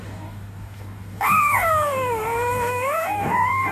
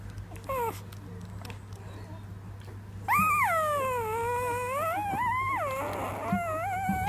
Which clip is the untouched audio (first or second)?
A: second